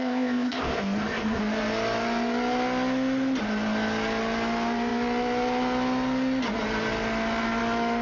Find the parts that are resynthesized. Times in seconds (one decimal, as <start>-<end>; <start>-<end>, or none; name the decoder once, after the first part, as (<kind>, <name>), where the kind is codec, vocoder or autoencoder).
0.0-1.4 (codec, ZipCodec)